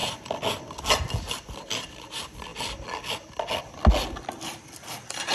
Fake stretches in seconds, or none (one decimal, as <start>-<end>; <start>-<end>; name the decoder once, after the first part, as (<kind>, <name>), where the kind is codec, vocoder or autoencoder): none